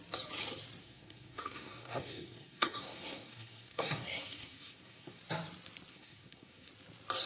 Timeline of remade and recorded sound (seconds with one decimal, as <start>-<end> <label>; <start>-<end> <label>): 0.0-0.8 recorded; 0.8-5.2 remade; 5.2-5.9 recorded; 5.9-6.7 remade; 6.7-7.3 recorded